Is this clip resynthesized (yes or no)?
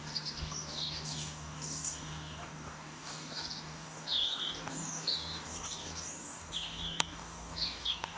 yes